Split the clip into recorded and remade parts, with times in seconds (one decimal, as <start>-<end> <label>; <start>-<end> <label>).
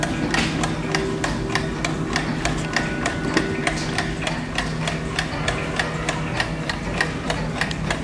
0.0-8.0 recorded